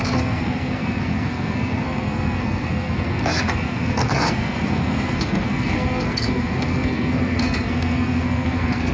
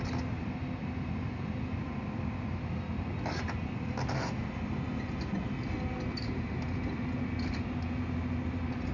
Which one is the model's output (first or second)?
first